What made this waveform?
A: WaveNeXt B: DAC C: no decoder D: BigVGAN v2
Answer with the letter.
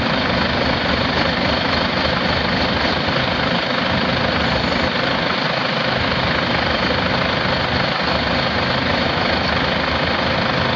C